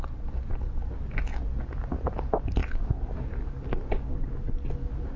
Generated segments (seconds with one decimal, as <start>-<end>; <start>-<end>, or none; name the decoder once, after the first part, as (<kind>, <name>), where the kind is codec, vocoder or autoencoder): none